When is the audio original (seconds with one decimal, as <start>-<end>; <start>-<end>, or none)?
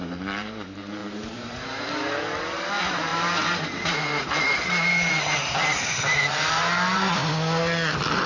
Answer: 7.2-8.3